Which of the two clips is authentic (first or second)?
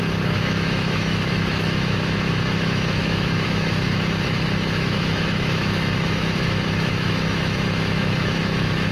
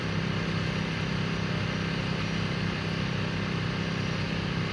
second